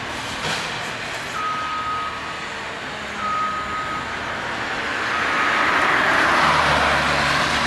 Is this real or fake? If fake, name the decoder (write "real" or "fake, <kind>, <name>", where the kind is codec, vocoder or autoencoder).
real